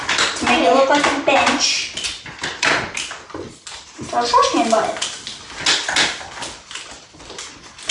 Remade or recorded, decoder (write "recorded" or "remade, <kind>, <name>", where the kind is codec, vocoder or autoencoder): recorded